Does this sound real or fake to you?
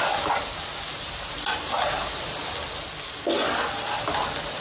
real